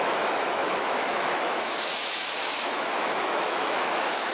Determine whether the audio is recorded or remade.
remade